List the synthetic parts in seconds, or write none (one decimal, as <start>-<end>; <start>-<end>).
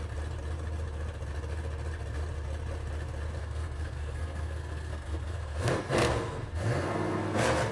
3.4-7.7